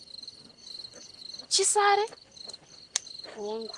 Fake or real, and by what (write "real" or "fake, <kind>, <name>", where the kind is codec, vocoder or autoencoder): real